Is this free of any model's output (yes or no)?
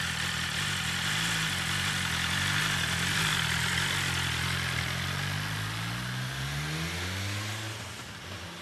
yes